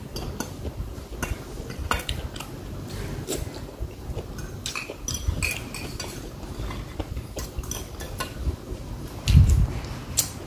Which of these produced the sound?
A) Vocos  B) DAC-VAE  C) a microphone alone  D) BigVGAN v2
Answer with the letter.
C